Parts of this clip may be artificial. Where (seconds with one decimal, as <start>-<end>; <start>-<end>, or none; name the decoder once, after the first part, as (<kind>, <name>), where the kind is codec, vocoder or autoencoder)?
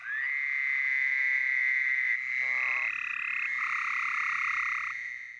none